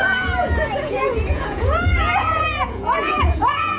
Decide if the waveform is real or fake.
fake